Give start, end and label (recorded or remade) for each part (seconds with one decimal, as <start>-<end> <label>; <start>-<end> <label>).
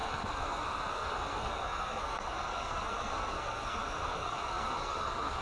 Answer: 0.0-5.4 remade